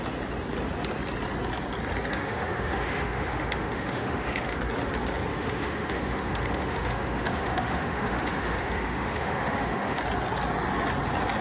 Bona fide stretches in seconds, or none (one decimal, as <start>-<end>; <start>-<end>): 0.0-2.1; 4.6-5.3; 10.0-11.4